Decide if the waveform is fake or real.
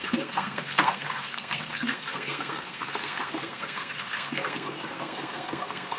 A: fake